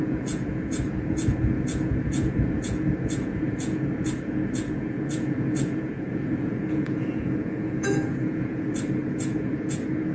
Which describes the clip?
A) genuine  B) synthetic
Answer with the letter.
B